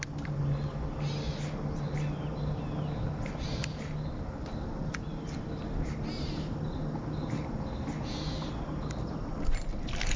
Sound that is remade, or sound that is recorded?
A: recorded